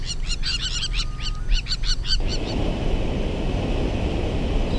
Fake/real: real